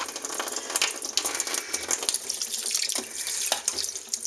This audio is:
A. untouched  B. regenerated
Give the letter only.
A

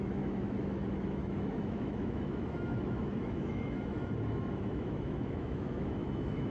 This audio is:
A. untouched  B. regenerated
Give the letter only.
B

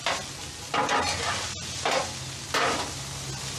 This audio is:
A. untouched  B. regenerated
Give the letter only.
A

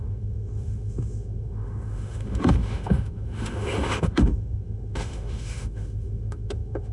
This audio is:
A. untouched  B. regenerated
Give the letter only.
B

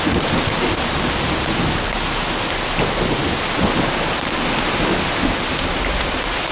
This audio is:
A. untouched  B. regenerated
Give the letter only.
A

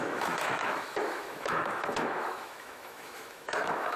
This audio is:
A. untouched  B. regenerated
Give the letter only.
B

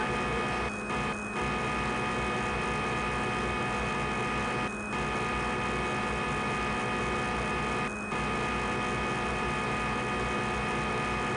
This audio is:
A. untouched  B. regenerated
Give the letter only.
A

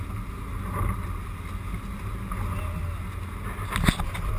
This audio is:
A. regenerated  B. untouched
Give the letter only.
B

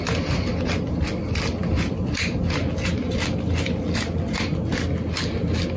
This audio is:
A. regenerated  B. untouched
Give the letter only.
B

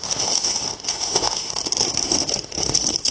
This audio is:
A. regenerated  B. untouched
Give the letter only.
A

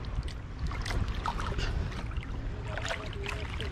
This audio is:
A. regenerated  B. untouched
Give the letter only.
B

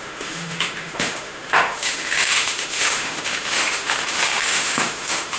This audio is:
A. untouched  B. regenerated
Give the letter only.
B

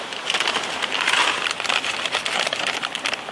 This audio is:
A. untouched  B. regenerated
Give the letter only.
A